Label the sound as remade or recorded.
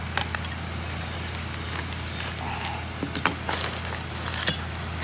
recorded